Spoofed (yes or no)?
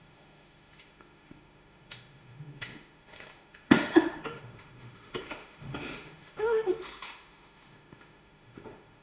yes